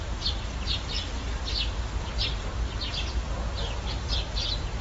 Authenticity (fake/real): real